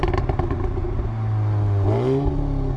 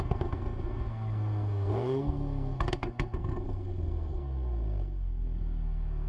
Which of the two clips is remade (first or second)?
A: second